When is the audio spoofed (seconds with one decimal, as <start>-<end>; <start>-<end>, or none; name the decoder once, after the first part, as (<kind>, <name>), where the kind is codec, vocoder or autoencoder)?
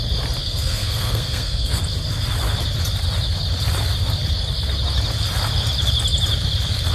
0.4-1.8 (codec, SNAC)